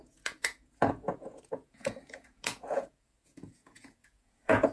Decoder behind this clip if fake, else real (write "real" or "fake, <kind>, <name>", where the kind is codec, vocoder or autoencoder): fake, vocoder, Vocos